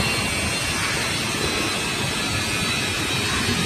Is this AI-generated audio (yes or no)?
no